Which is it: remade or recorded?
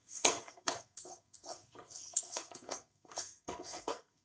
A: remade